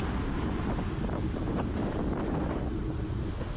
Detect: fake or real real